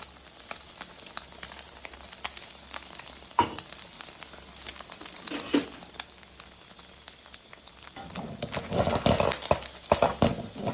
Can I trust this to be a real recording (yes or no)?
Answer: yes